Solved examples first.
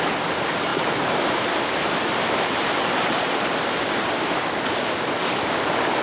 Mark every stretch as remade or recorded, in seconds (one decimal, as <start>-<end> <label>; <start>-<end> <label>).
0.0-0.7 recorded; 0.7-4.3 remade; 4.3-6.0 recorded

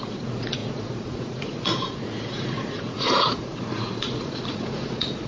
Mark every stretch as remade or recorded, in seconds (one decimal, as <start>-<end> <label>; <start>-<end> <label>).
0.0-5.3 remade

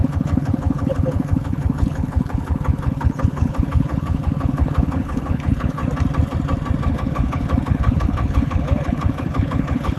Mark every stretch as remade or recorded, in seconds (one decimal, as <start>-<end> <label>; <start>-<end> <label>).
0.0-5.8 remade; 5.8-6.9 recorded; 6.9-10.0 remade